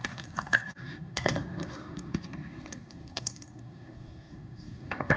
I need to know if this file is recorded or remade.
remade